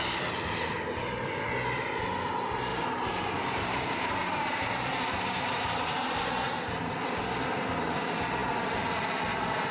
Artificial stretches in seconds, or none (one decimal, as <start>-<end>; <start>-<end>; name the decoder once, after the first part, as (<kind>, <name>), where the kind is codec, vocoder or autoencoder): 2.7-6.9 (vocoder, BigVGAN v2)